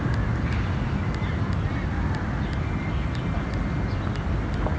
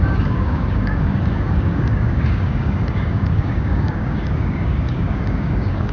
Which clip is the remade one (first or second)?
second